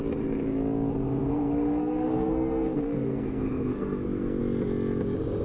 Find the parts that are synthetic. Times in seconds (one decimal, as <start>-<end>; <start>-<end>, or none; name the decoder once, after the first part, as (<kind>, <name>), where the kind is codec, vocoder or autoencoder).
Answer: 1.2-4.4 (codec, SNAC)